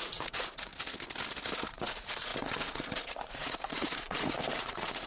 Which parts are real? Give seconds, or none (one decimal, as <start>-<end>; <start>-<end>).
0.7-1.7